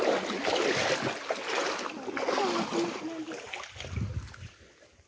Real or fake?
real